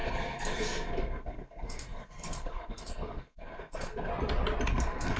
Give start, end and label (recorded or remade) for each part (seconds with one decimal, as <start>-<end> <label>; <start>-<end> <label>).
0.0-4.1 remade; 4.1-4.7 recorded; 4.7-5.2 remade